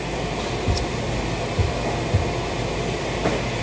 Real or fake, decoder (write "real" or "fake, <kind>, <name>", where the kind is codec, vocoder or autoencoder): real